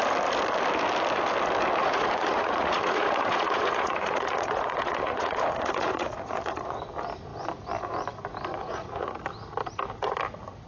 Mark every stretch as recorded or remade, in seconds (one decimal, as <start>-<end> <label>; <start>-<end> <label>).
0.0-1.8 recorded; 1.8-6.8 remade; 6.8-8.6 recorded; 8.6-9.2 remade; 9.2-10.7 recorded